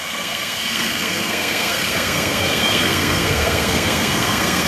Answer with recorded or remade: remade